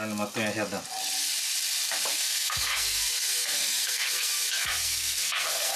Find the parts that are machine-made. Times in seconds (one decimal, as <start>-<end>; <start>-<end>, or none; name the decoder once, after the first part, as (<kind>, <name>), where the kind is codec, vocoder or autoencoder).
2.1-5.8 (codec, SNAC)